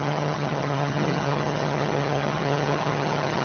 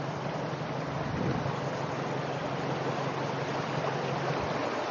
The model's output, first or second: first